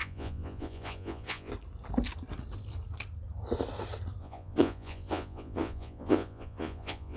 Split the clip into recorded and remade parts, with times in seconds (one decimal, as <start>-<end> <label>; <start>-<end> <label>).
0.0-1.5 remade; 1.5-4.2 recorded; 4.2-7.2 remade